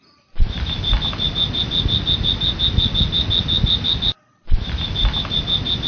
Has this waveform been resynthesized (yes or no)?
no